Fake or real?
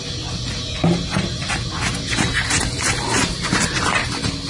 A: real